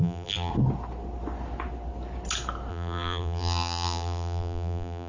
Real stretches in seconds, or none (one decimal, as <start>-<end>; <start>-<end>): 0.5-2.7